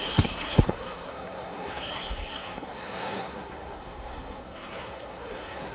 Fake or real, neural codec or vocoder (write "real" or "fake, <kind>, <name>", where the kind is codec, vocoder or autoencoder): fake, codec, SNAC